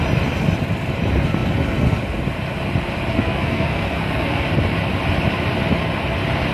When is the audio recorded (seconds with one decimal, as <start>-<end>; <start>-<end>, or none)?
0.0-3.1; 4.5-6.5